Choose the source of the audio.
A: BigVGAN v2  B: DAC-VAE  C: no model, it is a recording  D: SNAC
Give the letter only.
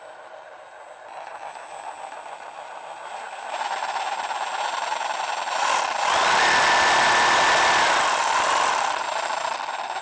C